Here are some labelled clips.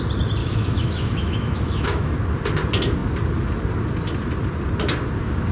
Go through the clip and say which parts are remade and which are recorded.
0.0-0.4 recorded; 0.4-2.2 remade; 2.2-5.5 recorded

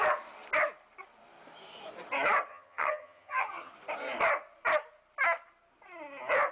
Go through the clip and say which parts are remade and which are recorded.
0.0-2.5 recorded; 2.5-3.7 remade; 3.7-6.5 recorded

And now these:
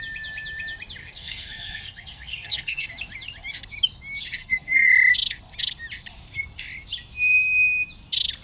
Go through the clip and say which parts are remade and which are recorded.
0.0-1.0 recorded; 1.0-2.9 remade; 2.9-4.4 recorded; 4.4-4.9 remade; 4.9-8.4 recorded

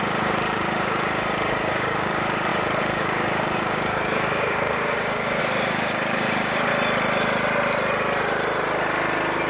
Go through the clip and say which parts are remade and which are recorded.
0.0-6.7 remade; 6.7-9.5 recorded

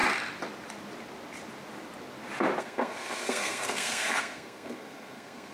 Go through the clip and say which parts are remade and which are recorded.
0.0-2.6 recorded; 2.6-5.5 remade

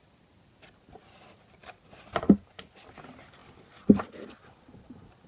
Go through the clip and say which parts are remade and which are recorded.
0.0-5.3 recorded

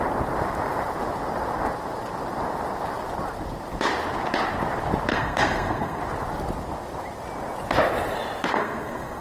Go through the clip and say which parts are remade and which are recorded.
0.0-5.1 recorded; 5.1-6.0 remade; 6.0-8.5 recorded; 8.5-9.2 remade